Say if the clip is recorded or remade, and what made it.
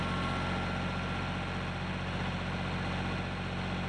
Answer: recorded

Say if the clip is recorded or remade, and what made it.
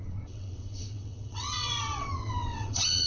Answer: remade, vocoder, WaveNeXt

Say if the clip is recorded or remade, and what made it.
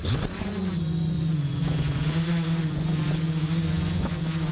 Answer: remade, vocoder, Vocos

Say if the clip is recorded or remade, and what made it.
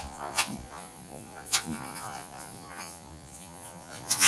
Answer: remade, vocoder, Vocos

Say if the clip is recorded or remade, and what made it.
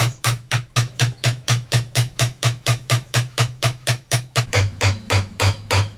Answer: remade, autoencoder, DAC-VAE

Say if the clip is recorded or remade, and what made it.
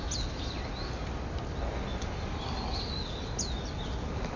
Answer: recorded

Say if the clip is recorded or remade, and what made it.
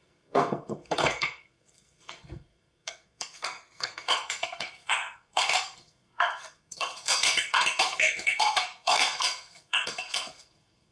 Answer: remade, codec, SNAC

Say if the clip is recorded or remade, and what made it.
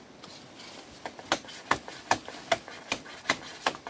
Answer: recorded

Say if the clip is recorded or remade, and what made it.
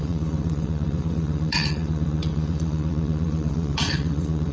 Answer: remade, vocoder, WaveNeXt